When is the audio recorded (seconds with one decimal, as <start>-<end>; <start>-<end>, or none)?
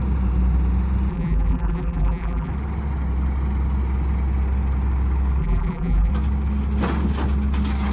0.0-1.1; 2.5-5.4; 6.1-7.9